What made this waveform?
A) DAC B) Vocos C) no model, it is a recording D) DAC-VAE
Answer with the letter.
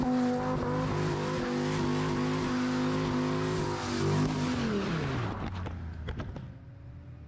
C